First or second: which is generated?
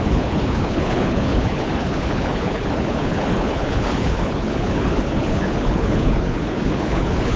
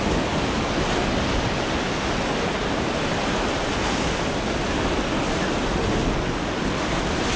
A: first